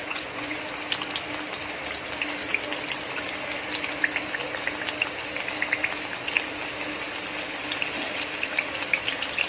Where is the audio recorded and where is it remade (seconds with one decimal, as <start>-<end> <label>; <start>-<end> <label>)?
0.0-0.6 remade; 0.6-9.5 recorded